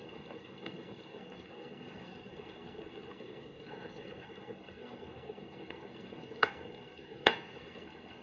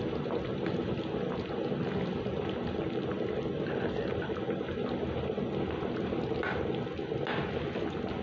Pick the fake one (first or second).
first